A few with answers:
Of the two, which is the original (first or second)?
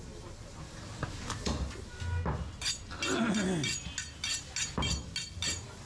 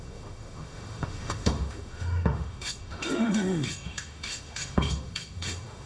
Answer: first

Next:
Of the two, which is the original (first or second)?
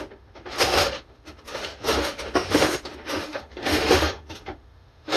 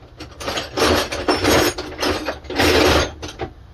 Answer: second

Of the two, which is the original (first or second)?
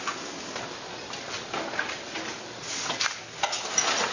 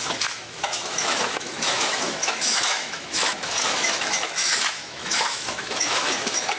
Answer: first